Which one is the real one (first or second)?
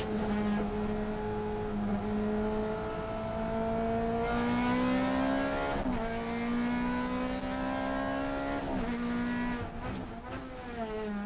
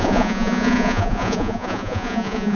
first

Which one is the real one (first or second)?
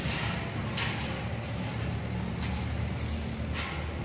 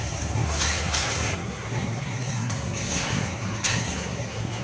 first